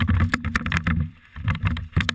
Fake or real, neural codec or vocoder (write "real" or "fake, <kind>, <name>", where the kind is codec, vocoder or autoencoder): fake, vocoder, BigVGAN v2